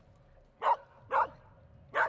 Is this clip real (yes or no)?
yes